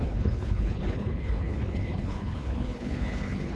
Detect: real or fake fake